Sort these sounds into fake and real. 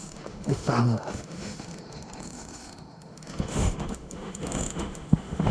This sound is fake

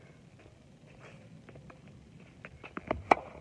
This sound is real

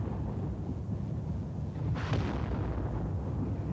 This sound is real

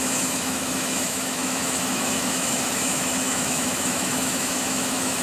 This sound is fake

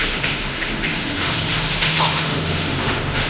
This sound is fake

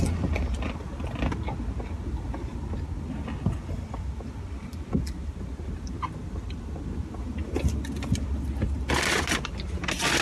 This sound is real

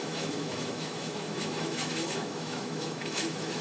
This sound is fake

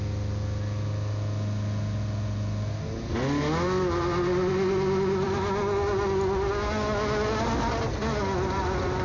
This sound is real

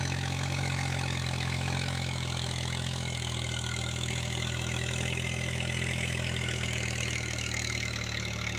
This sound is fake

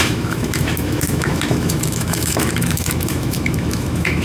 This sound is fake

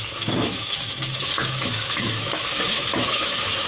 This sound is fake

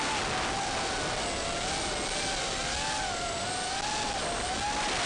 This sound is real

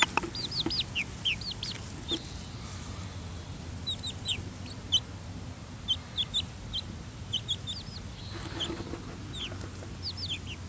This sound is real